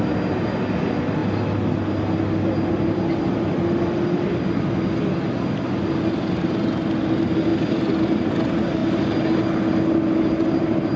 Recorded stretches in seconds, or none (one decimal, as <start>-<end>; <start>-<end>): 0.0-11.0